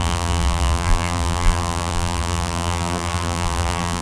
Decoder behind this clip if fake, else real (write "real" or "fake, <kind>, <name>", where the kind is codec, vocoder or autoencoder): fake, vocoder, BigVGAN v2